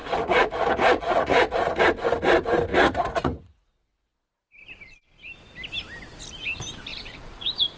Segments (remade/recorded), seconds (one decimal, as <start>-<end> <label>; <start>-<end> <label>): 0.0-1.8 remade; 1.8-2.7 recorded; 2.7-3.8 remade; 3.8-6.9 recorded; 6.9-7.8 remade